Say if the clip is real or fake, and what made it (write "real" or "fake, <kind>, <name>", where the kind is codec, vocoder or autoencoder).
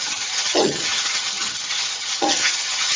fake, vocoder, HiFi-GAN